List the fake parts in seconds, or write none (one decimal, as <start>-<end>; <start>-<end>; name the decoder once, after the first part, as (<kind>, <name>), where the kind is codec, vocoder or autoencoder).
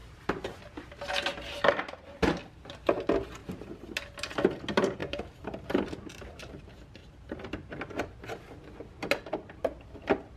0.0-0.6 (vocoder, BigVGAN v2); 3.4-3.9; 5.0-6.6; 7.0-7.7